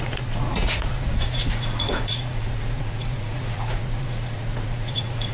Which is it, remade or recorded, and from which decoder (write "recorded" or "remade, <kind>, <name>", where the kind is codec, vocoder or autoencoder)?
remade, vocoder, Vocos